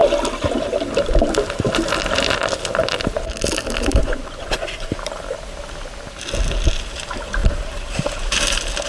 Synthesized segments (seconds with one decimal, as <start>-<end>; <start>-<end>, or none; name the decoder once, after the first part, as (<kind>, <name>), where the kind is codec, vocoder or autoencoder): 4.0-4.9 (vocoder, Vocos)